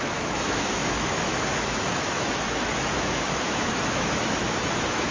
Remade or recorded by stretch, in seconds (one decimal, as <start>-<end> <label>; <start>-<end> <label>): 0.0-5.1 remade